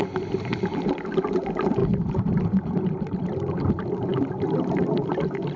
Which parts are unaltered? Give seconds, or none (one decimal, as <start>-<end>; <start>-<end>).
0.0-1.8; 2.9-5.6